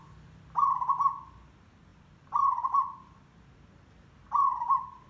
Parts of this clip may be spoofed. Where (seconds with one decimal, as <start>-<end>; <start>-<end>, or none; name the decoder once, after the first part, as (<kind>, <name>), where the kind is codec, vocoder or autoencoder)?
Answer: none